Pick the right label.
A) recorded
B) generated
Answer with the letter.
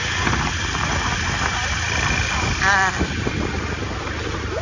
A